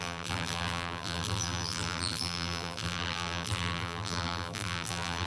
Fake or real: fake